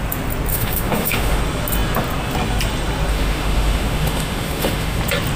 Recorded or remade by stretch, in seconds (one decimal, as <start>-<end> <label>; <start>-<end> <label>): 0.0-0.5 recorded; 0.5-1.4 remade; 1.4-3.1 recorded; 3.1-5.0 remade; 5.0-5.4 recorded